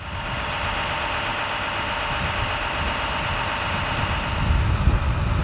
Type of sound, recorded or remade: recorded